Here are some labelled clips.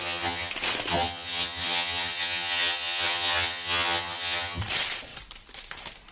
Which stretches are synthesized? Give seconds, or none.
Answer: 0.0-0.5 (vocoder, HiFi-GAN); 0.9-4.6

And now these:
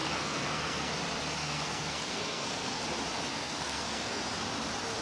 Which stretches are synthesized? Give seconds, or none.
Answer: 0.0-0.9 (codec, SNAC); 1.4-2.8; 3.3-4.2

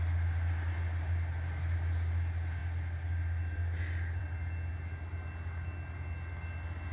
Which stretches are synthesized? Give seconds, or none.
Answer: none

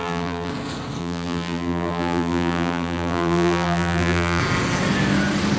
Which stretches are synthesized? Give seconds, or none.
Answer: 0.0-0.5 (vocoder, BigVGAN v2); 1.0-4.4